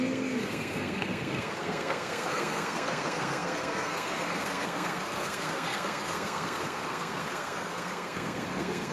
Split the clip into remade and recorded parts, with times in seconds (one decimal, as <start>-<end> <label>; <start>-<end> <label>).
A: 0.0-8.9 remade